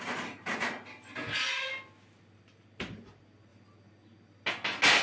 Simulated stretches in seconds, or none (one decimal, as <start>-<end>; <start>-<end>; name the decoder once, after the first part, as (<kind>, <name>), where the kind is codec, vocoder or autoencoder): none